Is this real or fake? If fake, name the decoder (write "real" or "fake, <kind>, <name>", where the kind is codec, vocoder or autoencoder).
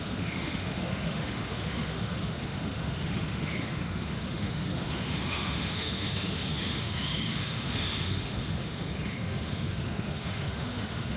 fake, autoencoder, DAC-VAE